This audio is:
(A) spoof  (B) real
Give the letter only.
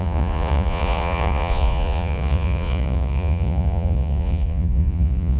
A